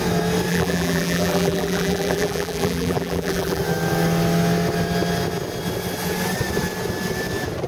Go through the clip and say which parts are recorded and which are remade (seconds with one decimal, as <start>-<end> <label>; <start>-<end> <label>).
0.0-0.5 recorded; 0.5-3.6 remade; 3.6-7.7 recorded